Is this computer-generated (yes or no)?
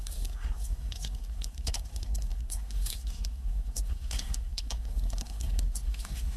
yes